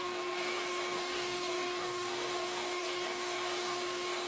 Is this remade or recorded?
remade